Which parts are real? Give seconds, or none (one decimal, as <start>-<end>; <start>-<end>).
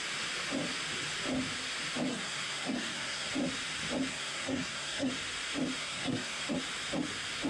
0.0-2.1; 3.3-4.1; 5.1-5.8; 6.5-7.5